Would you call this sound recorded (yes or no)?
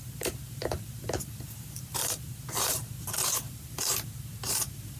no